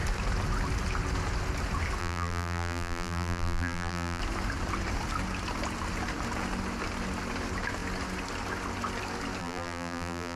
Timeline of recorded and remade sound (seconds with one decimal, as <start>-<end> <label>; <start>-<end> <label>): 0.0-2.0 recorded; 2.0-4.2 remade; 4.2-9.4 recorded; 9.4-10.4 remade